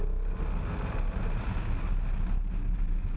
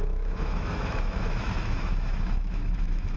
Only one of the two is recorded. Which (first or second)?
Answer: first